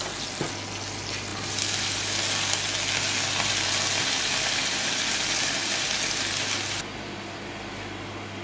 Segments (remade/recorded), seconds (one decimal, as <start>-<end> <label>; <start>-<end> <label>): 0.0-8.4 recorded